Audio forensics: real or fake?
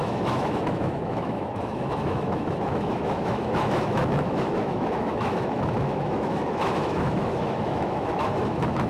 fake